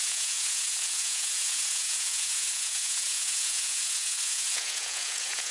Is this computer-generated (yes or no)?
yes